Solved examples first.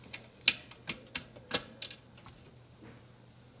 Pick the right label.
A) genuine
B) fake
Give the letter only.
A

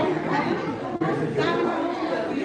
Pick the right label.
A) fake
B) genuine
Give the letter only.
B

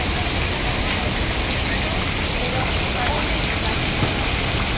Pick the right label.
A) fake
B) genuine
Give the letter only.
B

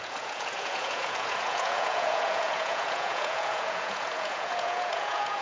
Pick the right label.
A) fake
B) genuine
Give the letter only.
A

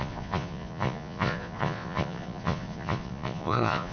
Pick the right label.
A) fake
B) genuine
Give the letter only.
A